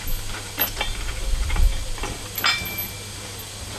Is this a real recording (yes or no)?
yes